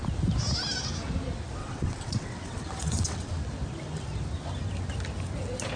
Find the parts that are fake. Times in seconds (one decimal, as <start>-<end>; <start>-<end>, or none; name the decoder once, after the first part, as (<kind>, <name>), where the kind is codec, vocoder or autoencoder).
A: 1.6-3.3 (vocoder, WaveNeXt)